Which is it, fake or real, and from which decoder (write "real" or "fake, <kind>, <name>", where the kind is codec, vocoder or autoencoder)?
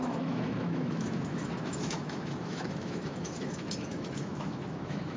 fake, autoencoder, DAC-VAE